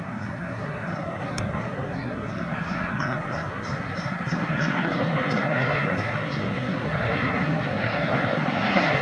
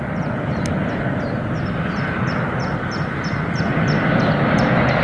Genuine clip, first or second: second